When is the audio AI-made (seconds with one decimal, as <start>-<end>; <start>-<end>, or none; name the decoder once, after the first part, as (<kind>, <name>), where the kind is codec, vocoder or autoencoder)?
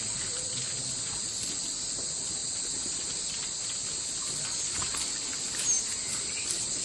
none